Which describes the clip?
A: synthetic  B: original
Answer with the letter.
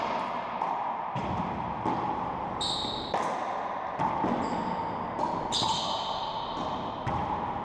B